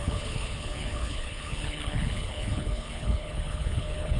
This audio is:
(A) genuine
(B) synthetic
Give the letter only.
B